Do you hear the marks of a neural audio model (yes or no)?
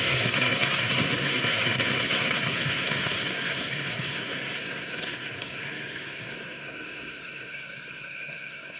yes